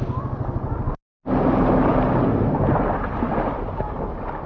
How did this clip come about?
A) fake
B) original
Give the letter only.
B